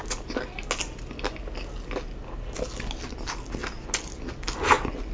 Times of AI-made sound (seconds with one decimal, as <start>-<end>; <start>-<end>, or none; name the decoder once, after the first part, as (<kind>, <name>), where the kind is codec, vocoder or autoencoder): none